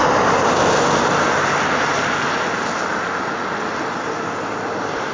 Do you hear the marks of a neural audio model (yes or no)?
no